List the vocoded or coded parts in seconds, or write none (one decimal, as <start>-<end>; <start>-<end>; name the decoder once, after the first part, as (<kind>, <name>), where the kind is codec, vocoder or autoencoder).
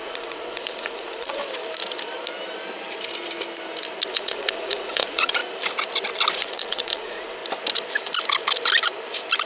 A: 0.0-1.4 (vocoder, Vocos); 4.1-5.4; 6.3-7.4